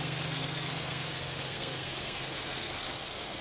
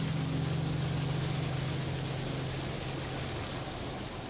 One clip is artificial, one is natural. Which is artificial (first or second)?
first